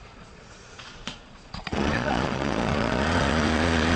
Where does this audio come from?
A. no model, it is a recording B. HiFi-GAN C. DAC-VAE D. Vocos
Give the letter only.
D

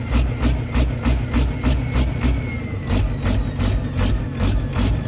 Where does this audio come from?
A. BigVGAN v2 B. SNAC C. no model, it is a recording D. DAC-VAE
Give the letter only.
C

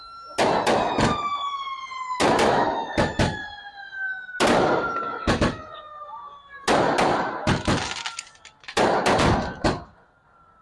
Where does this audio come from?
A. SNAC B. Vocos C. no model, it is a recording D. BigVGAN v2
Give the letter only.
C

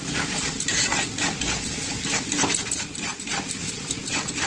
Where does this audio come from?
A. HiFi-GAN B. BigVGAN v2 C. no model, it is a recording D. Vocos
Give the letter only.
C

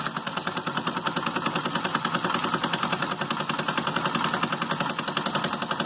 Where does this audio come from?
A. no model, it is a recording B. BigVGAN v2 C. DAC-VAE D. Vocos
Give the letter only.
A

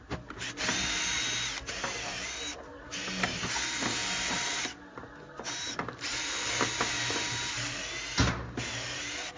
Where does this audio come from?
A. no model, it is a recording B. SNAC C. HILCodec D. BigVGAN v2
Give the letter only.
A